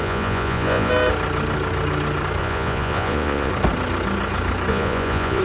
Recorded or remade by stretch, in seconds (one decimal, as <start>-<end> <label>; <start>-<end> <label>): 0.0-0.9 remade; 0.9-2.4 recorded; 2.4-3.5 remade; 3.5-4.7 recorded; 4.7-5.4 remade